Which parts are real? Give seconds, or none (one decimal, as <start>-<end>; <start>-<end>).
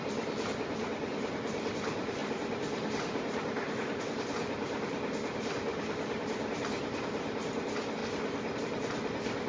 8.0-8.6